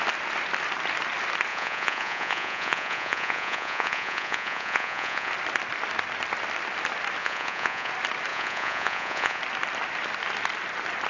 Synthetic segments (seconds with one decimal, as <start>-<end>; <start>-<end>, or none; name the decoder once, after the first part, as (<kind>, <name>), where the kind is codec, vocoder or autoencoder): 1.5-5.3 (vocoder, Vocos); 7.2-7.9; 8.3-9.4